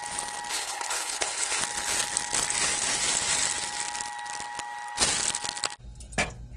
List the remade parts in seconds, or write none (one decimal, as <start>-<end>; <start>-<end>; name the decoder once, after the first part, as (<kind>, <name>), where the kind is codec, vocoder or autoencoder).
0.5-1.6 (codec, HILCodec)

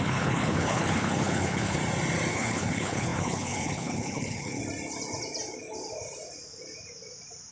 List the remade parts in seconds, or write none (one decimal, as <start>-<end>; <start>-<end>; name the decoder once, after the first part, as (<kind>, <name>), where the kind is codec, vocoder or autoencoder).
0.0-1.8 (codec, HILCodec); 2.3-4.6

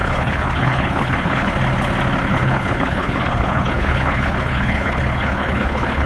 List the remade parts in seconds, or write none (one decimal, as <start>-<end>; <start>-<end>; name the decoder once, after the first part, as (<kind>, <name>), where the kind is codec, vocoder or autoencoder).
0.0-1.5 (codec, HILCodec); 2.3-6.1

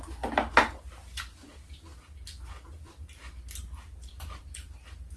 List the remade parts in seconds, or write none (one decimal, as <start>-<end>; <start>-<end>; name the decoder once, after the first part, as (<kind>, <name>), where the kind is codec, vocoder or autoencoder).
none

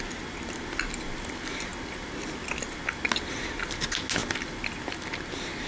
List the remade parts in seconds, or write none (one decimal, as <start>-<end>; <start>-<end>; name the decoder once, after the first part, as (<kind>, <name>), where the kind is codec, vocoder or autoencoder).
none

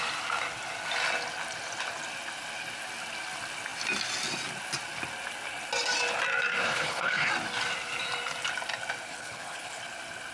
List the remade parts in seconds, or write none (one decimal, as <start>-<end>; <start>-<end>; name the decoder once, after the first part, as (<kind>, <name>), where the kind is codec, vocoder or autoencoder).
6.6-7.3 (codec, HILCodec); 9.1-9.8

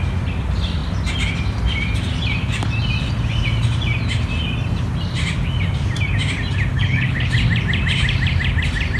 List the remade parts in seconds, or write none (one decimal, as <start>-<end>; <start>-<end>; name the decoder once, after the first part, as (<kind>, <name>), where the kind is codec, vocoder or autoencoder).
6.7-7.3 (codec, HILCodec)

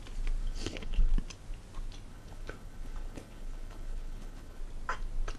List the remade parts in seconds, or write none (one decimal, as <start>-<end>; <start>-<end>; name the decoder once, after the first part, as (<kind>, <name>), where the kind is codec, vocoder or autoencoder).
0.4-1.1 (codec, HILCodec); 2.1-4.6